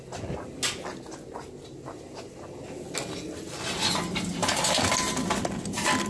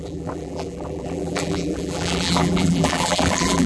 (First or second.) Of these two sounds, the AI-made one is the second